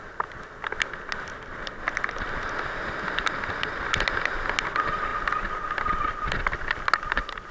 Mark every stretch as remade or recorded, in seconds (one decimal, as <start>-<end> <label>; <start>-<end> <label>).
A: 0.0-7.5 recorded